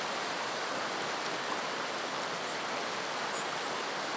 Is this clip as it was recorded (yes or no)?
yes